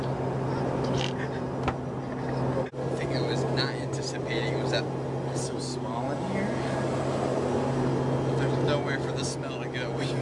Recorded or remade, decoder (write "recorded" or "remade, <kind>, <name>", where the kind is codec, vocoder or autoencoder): recorded